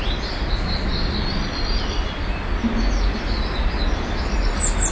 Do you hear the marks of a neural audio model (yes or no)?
no